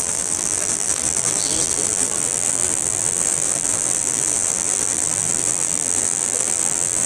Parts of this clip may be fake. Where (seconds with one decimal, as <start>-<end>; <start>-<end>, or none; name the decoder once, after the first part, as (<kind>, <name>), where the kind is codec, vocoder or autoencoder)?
0.0-7.1 (vocoder, BigVGAN v2)